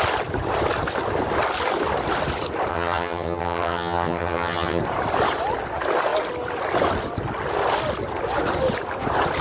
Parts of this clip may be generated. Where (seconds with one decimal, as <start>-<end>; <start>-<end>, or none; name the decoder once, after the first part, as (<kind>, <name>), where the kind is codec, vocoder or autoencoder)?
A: 2.7-4.8 (vocoder, HiFi-GAN)